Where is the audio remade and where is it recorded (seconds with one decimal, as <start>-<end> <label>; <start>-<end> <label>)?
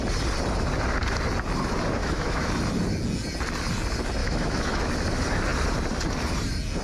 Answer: 0.0-2.0 recorded; 2.0-2.5 remade; 2.5-4.2 recorded; 4.2-4.9 remade; 4.9-6.8 recorded